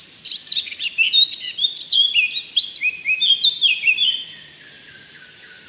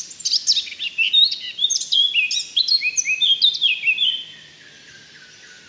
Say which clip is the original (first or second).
second